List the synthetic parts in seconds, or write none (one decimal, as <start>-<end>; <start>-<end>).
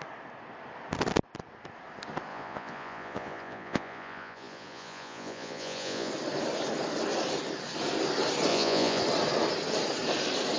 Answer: 2.3-6.1; 8.5-9.0